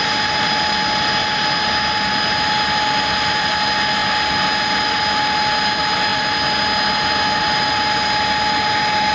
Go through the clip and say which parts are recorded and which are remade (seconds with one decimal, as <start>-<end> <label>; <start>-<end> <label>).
0.0-9.1 recorded